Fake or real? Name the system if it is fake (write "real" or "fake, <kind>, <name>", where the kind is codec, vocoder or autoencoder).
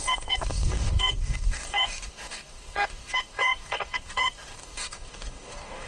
fake, codec, DAC